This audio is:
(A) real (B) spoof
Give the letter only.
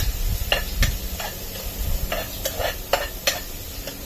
B